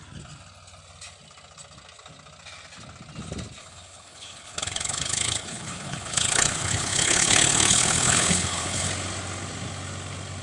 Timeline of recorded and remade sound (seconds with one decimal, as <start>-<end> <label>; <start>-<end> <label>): 0.0-3.6 recorded; 3.6-8.9 remade; 8.9-10.4 recorded